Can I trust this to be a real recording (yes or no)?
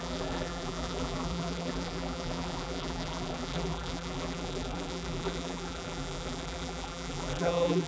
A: no